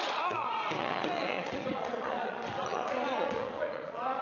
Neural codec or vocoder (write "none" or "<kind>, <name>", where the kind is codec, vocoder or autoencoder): vocoder, Vocos